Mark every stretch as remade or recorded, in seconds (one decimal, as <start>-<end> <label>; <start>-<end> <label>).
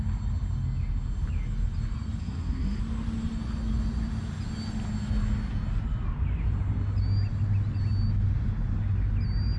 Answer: 0.0-2.2 recorded; 2.2-2.8 remade; 2.8-9.6 recorded